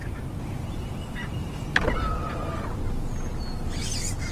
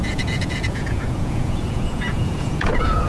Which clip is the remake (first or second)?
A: second